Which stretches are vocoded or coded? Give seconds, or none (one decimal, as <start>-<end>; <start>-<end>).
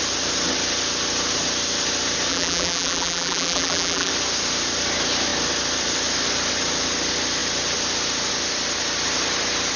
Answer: 2.3-4.1